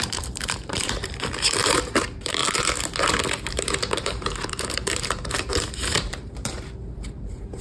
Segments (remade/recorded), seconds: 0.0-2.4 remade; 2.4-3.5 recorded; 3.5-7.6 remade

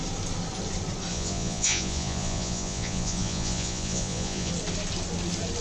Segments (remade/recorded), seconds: 0.0-1.1 recorded; 1.1-4.5 remade; 4.5-5.6 recorded

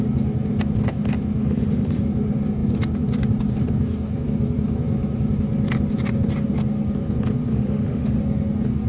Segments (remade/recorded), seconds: 0.0-1.4 recorded; 1.4-2.0 remade; 2.0-7.5 recorded; 7.5-8.2 remade; 8.2-8.9 recorded

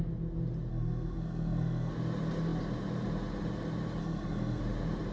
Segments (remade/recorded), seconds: 0.0-0.7 recorded; 0.7-1.9 remade; 1.9-4.0 recorded; 4.0-4.6 remade; 4.6-5.1 recorded

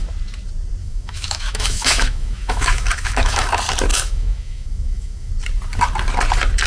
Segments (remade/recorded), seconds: 0.0-0.8 recorded; 0.8-3.5 remade; 3.5-3.9 recorded; 3.9-5.3 remade; 5.3-6.7 recorded